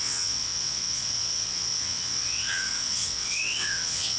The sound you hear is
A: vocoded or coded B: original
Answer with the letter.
A